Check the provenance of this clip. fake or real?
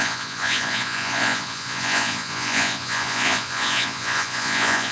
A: fake